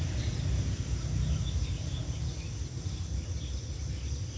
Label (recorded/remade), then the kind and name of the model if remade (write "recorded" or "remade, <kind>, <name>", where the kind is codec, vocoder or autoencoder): recorded